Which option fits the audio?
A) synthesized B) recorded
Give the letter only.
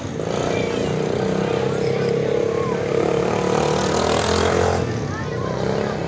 B